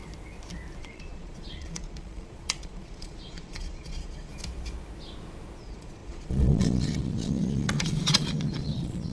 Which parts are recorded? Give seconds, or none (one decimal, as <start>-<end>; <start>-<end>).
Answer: 0.0-0.8; 4.3-5.6

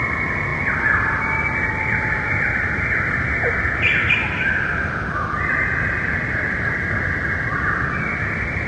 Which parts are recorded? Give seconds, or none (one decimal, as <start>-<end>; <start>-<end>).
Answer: 0.0-8.7